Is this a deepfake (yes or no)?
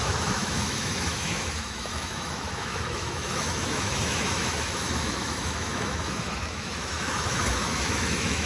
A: yes